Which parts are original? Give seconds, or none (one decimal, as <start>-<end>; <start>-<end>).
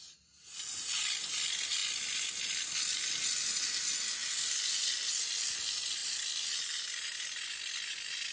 0.0-6.0; 6.8-8.3